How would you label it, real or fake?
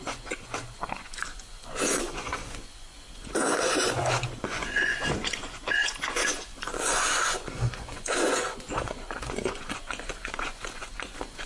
fake